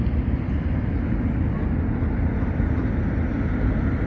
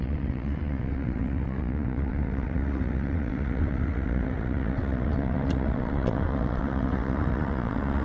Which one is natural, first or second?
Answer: first